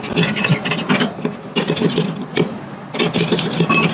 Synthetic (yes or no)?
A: no